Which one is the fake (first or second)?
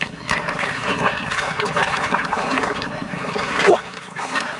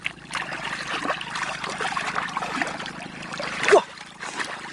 first